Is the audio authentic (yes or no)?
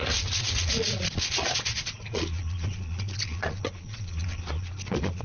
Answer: no